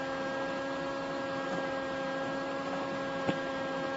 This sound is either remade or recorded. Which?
recorded